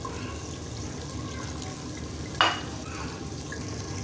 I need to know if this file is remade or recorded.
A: recorded